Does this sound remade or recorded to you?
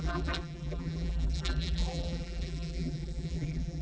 remade